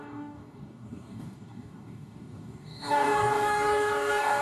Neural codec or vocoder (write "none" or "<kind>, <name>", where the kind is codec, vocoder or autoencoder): codec, DAC